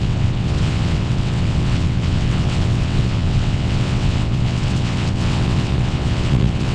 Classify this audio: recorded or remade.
remade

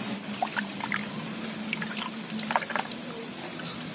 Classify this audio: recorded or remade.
recorded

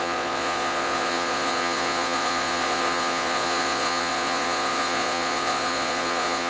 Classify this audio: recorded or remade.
remade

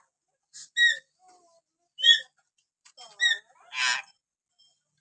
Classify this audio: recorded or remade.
recorded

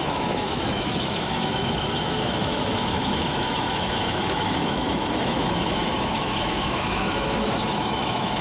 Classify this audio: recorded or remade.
remade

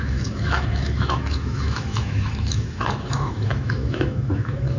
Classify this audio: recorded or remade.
remade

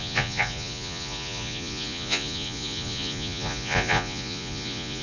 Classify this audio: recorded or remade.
remade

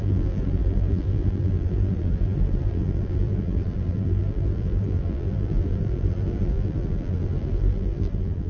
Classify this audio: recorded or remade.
remade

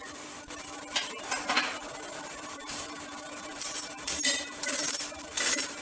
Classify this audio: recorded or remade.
remade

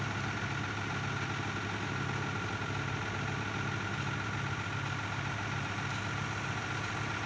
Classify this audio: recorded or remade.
recorded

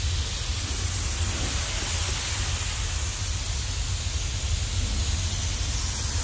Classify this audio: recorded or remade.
recorded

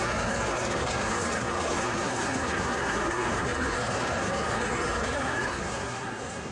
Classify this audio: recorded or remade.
remade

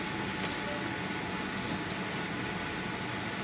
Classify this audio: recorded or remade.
recorded